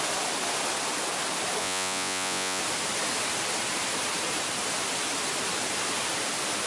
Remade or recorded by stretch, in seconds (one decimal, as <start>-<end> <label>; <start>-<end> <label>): 0.0-1.6 recorded; 1.6-2.6 remade; 2.6-6.7 recorded